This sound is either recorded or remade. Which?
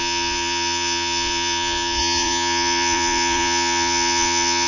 remade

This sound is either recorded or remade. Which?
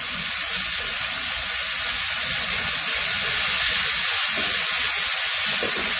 remade